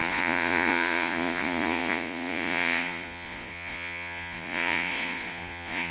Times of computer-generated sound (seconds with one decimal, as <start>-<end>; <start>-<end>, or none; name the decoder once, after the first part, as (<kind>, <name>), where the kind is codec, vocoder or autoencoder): 0.0-5.9 (vocoder, Vocos)